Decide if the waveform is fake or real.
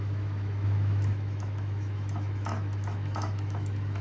fake